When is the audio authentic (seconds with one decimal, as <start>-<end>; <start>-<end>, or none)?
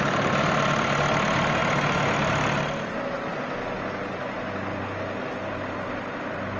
0.0-6.6